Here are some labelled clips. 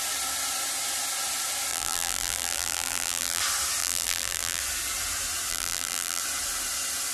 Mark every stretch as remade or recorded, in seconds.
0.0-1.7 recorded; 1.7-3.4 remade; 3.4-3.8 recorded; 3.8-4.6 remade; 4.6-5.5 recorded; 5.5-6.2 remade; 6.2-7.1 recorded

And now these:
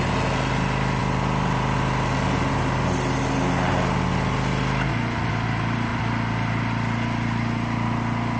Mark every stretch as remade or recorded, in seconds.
0.0-8.4 recorded

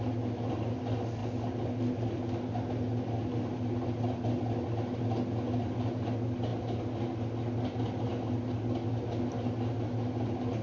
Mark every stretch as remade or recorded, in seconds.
0.0-10.6 recorded

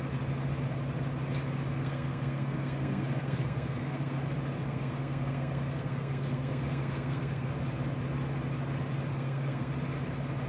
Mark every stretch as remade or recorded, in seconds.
0.0-1.8 recorded; 1.8-4.2 remade; 4.2-4.7 recorded; 4.7-7.5 remade; 7.5-9.1 recorded; 9.1-9.7 remade; 9.7-10.5 recorded

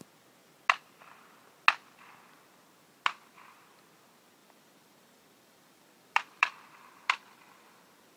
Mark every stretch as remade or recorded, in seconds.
0.0-4.4 recorded; 4.4-8.2 remade